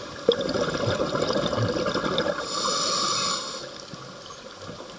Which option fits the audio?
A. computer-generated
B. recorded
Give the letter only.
B